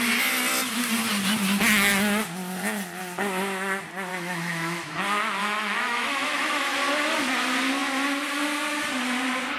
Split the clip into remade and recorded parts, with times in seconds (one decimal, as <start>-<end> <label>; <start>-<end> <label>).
0.0-4.1 recorded; 4.1-4.9 remade; 4.9-5.4 recorded; 5.4-6.7 remade; 6.7-9.6 recorded